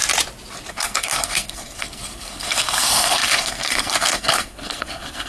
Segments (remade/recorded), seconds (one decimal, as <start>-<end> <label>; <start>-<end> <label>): 0.0-0.7 recorded; 0.7-5.3 remade